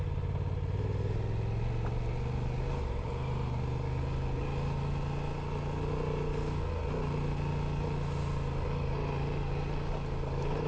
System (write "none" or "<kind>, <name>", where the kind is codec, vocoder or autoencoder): none